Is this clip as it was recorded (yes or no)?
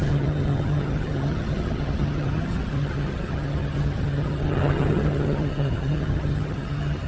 no